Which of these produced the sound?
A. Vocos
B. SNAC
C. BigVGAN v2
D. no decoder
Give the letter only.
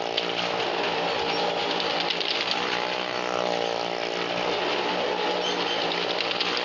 D